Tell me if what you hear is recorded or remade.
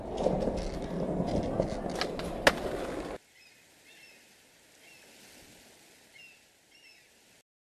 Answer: recorded